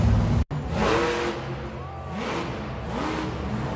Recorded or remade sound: recorded